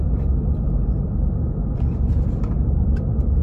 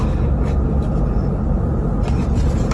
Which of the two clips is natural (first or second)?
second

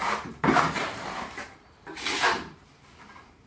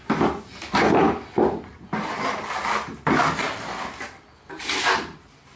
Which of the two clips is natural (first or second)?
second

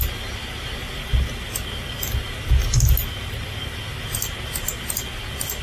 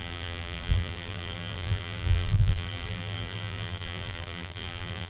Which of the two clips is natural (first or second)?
first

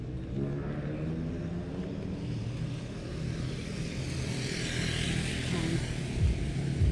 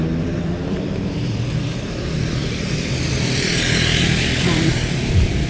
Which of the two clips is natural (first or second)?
first